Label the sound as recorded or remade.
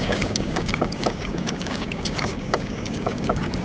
remade